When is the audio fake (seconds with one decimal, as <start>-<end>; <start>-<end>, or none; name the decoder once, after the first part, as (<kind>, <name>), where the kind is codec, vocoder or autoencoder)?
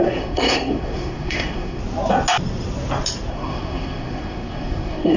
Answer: 0.0-1.8 (codec, SNAC); 3.3-5.2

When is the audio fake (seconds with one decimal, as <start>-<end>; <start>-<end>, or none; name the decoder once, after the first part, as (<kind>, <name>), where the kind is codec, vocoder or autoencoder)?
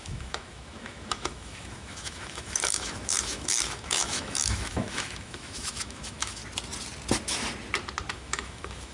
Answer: 0.0-6.4 (autoencoder, DAC-VAE); 8.1-8.9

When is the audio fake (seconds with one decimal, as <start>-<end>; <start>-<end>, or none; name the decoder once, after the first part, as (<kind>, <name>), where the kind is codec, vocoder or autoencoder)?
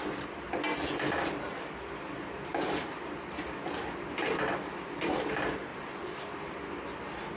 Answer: 5.7-6.5 (vocoder, BigVGAN v2)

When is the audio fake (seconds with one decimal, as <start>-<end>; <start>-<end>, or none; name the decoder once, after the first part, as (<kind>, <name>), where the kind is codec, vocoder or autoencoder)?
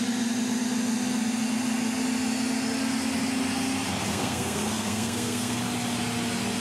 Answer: 4.1-5.6 (codec, SNAC)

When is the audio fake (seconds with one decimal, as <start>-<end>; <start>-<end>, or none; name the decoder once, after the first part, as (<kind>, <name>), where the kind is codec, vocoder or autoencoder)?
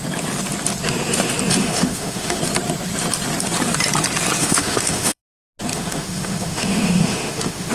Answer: 1.6-2.4 (autoencoder, DAC-VAE); 4.4-5.2; 5.7-7.7